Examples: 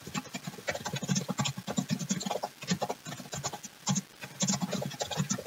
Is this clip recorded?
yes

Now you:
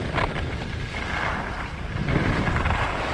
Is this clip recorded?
yes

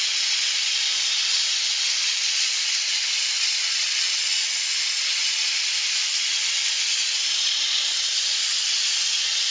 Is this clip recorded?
no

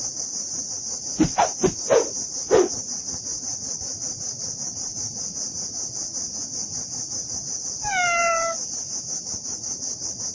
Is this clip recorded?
yes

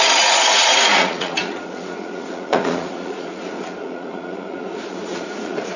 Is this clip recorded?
no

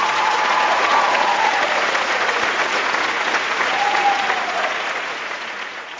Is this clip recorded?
no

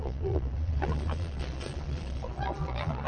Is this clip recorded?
no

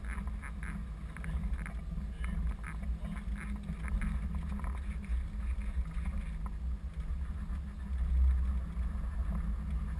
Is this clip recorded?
yes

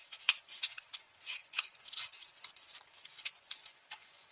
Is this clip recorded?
no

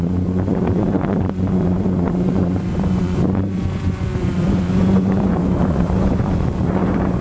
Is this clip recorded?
no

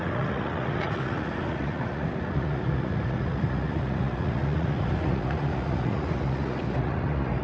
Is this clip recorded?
no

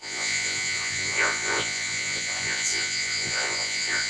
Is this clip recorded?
no